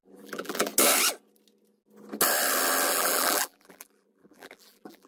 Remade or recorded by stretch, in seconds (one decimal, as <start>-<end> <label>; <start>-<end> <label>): 0.0-0.7 remade; 0.7-2.9 recorded; 2.9-5.1 remade